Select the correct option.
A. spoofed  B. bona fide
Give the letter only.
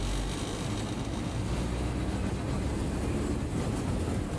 B